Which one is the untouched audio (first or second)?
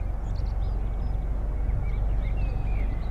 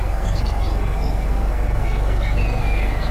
first